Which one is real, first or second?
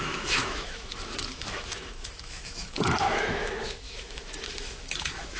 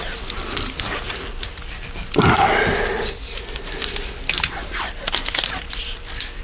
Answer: second